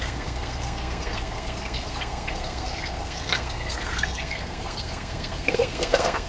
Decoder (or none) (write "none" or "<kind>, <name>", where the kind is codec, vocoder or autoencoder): codec, SNAC